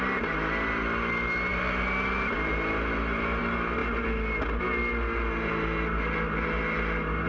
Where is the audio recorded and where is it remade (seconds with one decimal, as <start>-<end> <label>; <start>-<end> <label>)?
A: 0.0-7.3 recorded